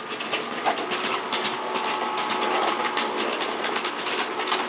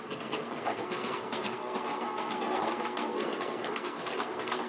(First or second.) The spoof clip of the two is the second